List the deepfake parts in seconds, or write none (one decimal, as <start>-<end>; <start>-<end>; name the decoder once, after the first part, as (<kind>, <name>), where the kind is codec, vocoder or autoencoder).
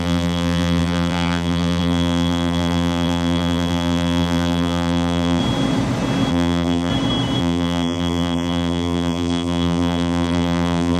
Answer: 0.0-5.4 (vocoder, BigVGAN v2); 6.3-6.9; 7.4-11.0